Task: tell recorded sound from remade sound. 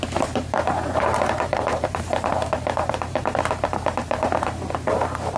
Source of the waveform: remade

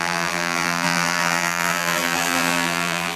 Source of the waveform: remade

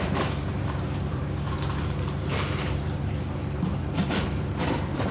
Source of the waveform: remade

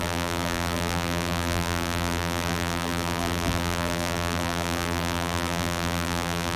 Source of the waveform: remade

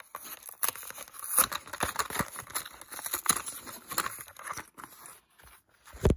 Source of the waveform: recorded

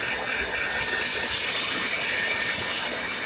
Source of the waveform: recorded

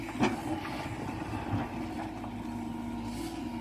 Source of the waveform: recorded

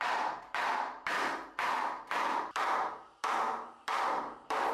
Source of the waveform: remade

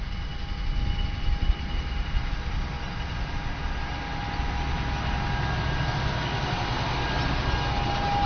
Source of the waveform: recorded